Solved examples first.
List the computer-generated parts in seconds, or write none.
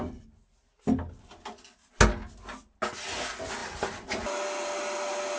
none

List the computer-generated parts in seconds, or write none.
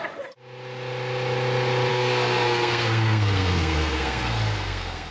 1.9-5.1 (codec, SNAC)